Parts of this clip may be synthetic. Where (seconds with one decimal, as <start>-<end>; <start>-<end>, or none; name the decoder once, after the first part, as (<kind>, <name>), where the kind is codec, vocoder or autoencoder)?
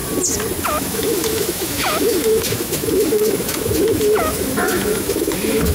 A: 0.6-5.7 (autoencoder, DAC-VAE)